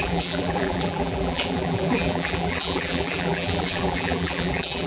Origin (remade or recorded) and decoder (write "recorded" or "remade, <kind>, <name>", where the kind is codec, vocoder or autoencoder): remade, vocoder, BigVGAN v2